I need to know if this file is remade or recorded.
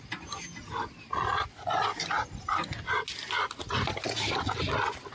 recorded